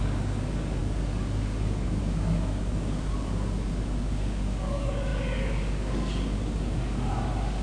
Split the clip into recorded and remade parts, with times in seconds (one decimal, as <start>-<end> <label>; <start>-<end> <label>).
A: 0.0-7.6 remade